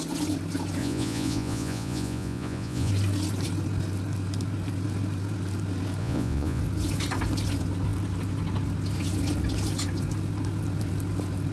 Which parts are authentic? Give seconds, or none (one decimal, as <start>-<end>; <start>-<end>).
0.0-0.8; 2.9-6.0; 6.6-11.5

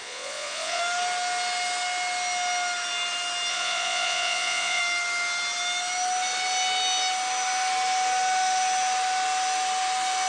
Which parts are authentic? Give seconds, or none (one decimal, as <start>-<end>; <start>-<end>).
0.8-3.5; 4.8-10.3

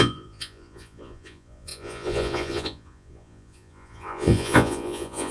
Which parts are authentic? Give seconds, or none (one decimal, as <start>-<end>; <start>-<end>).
none

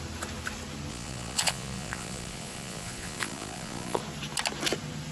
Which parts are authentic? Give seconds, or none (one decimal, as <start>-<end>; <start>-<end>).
0.0-0.9; 4.0-5.1

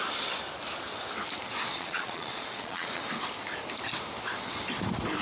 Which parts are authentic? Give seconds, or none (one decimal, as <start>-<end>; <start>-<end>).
0.0-1.7; 3.0-5.2

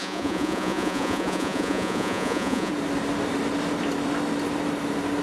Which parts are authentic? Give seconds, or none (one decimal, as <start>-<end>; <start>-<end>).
2.7-5.2

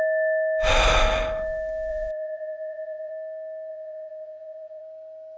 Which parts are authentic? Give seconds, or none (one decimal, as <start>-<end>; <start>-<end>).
0.0-1.9; 3.1-3.7; 4.8-5.4

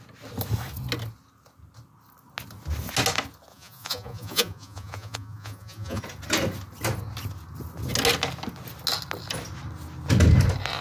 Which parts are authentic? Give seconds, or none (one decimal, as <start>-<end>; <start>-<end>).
0.0-3.5; 6.0-10.8